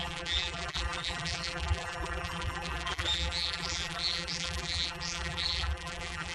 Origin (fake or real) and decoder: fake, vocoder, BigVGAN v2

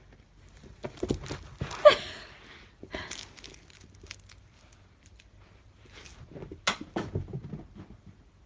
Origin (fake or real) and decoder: real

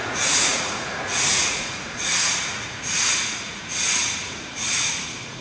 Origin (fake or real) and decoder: fake, vocoder, Vocos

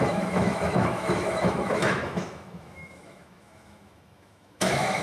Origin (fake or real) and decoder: fake, autoencoder, DAC-VAE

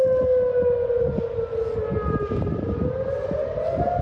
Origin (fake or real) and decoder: real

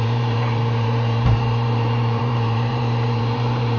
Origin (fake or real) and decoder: fake, vocoder, BigVGAN v2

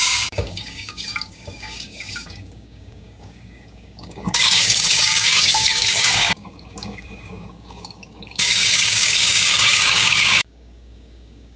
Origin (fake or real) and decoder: fake, codec, DAC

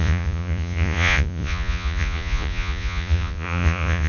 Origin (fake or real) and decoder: fake, vocoder, Vocos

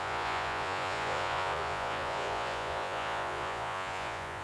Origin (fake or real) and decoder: fake, vocoder, Vocos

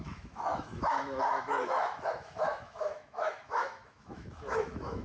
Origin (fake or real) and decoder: fake, autoencoder, DAC-VAE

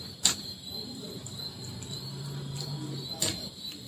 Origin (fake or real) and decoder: fake, vocoder, BigVGAN v2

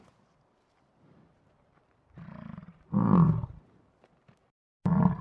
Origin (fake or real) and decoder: real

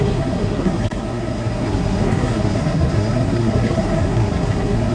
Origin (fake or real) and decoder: fake, codec, SNAC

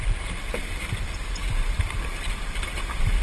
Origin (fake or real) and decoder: real